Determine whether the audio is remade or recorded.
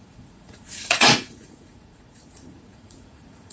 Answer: remade